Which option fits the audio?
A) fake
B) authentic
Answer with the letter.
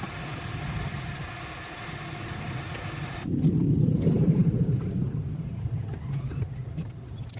B